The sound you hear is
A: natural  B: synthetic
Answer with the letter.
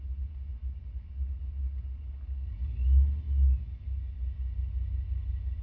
A